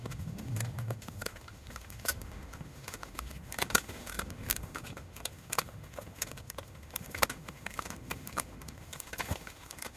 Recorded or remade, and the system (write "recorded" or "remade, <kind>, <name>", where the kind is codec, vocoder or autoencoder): remade, autoencoder, DAC-VAE